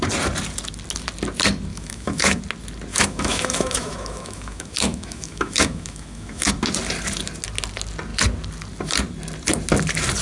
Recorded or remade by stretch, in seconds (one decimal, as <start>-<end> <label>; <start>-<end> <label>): 0.0-1.7 recorded; 1.7-2.4 remade; 2.4-2.9 recorded; 2.9-6.5 remade; 6.5-10.2 recorded